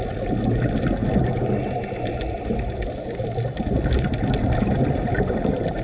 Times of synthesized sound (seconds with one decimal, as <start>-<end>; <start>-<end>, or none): none